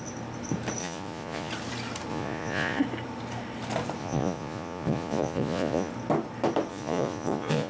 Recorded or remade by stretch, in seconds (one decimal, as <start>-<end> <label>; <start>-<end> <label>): 0.0-0.8 recorded; 0.8-1.5 remade; 1.5-2.1 recorded; 2.1-2.8 remade; 2.8-4.0 recorded; 4.0-5.9 remade; 5.9-6.7 recorded; 6.7-7.7 remade